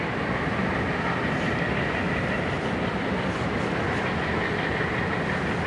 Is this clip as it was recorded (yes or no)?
yes